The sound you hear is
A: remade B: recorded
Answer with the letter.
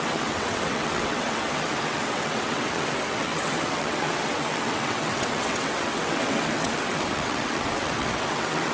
A